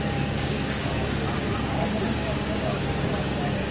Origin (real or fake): fake